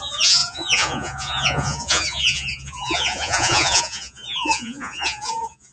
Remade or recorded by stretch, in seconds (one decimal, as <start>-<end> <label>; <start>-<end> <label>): 0.0-5.7 remade